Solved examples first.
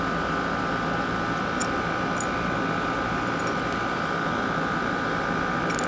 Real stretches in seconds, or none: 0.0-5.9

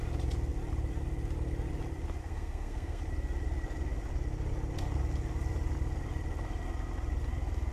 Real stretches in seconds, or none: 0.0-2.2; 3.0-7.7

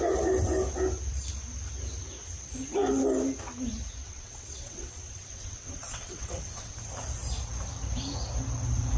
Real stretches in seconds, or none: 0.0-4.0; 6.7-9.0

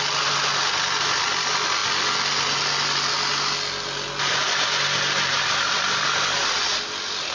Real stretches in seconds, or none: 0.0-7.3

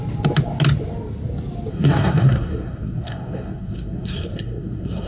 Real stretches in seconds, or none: 0.0-1.7